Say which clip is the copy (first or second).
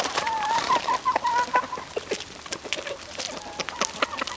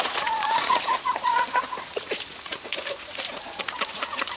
second